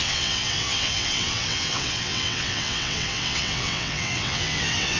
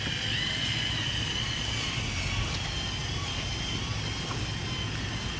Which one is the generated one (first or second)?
first